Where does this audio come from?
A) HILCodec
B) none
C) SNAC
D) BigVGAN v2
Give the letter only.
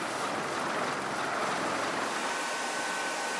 B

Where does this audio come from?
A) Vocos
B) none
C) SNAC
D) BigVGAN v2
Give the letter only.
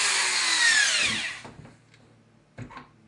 B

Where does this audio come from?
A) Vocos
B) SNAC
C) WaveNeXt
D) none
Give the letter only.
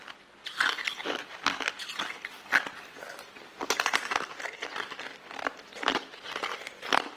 D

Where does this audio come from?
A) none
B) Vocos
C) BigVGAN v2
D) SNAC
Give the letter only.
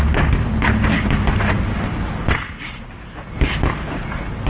A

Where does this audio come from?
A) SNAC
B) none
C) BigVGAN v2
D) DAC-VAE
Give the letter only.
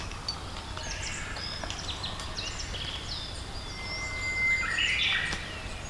B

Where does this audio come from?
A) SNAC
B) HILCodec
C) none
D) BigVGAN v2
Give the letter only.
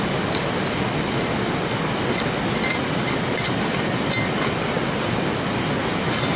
C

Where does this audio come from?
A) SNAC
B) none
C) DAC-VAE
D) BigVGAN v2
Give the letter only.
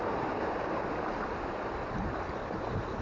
B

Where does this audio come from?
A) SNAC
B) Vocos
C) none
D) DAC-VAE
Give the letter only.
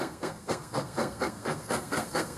A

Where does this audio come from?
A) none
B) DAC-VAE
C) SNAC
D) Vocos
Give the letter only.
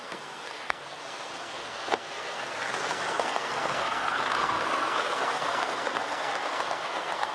C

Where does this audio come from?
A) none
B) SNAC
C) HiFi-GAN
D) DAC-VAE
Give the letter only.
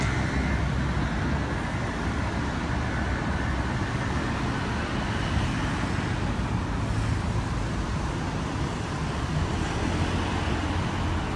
A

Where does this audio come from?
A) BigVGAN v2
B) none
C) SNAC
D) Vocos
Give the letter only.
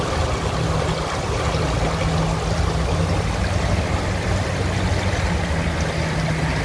B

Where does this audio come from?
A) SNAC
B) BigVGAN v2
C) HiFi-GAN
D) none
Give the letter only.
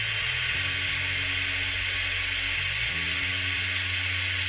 D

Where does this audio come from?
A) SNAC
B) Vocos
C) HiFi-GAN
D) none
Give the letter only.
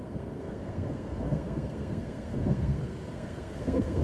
A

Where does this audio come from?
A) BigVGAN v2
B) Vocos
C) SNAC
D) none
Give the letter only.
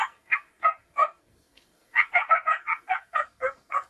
C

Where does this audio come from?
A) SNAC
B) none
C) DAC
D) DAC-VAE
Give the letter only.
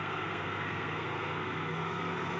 A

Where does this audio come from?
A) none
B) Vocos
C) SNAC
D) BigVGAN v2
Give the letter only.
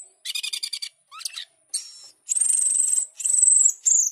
A